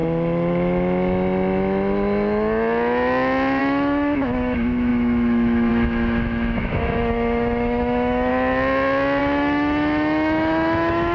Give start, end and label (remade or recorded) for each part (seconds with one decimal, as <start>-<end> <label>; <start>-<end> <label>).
0.0-3.6 recorded; 3.6-8.3 remade; 8.3-9.2 recorded; 9.2-11.1 remade